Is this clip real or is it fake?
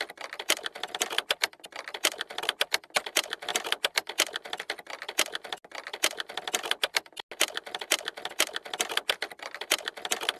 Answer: real